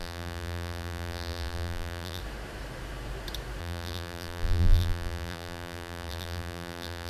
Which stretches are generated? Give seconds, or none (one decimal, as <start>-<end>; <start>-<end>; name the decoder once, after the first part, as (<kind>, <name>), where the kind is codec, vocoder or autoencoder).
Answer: 0.0-2.2 (vocoder, BigVGAN v2); 3.6-7.1